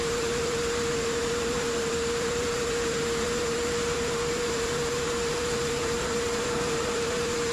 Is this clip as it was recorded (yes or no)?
no